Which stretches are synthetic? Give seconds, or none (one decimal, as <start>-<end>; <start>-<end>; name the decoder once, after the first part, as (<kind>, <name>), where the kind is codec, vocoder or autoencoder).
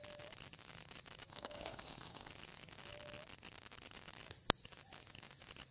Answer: 1.3-2.3 (codec, SNAC)